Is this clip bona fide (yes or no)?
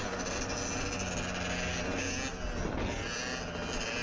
yes